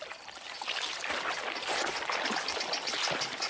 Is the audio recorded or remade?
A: recorded